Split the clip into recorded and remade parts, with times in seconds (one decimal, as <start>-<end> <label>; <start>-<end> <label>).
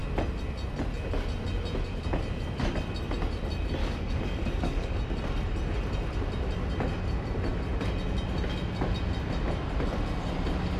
0.0-3.8 recorded; 3.8-5.0 remade; 5.0-10.8 recorded